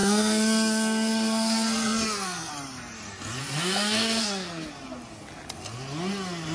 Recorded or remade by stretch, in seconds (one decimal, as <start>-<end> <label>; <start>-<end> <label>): 0.0-2.5 remade; 2.5-3.4 recorded; 3.4-4.7 remade; 4.7-6.5 recorded